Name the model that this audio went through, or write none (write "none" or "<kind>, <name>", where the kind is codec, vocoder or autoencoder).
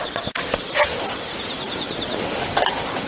vocoder, BigVGAN v2